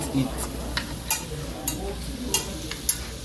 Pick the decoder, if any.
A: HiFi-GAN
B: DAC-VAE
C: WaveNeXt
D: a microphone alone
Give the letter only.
D